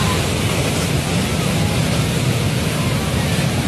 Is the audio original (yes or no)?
yes